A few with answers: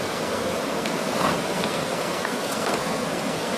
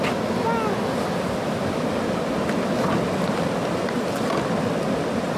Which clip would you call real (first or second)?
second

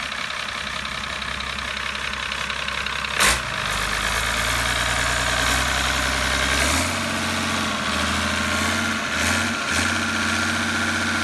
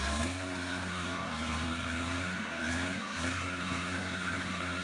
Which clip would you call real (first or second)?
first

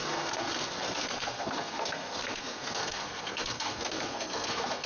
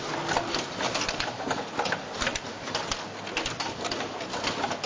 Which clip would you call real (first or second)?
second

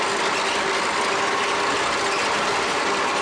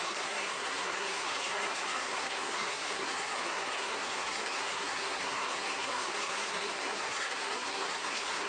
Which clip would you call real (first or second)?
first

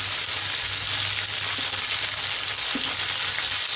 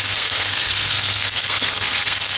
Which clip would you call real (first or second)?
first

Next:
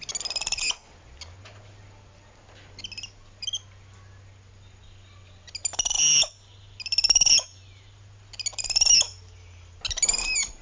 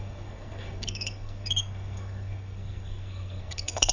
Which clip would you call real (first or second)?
first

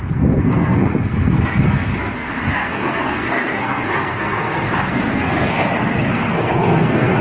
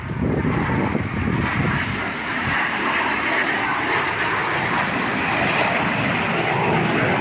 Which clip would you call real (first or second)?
second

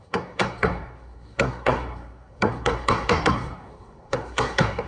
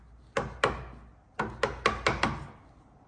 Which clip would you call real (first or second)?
second